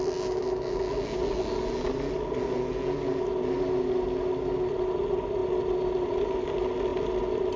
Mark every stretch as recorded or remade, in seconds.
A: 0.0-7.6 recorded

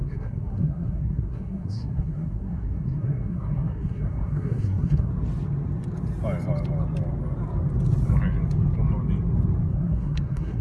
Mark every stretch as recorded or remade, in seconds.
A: 0.0-5.1 remade; 5.1-9.7 recorded; 9.7-10.6 remade